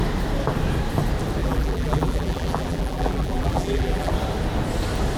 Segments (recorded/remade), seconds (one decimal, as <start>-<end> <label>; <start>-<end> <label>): 0.0-1.4 recorded; 1.4-4.1 remade; 4.1-5.2 recorded